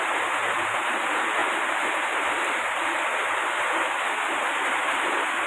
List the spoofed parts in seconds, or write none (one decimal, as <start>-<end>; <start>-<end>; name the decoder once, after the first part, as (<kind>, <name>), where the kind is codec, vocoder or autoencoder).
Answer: none